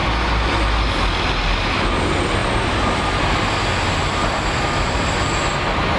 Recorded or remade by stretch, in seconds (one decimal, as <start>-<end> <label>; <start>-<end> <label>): 0.0-6.0 recorded